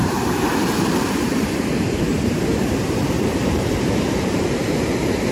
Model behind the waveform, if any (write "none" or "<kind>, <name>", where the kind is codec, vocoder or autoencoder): vocoder, BigVGAN v2